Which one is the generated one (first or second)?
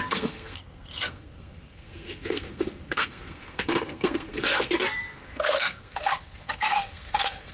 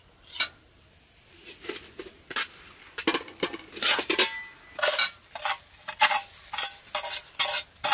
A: first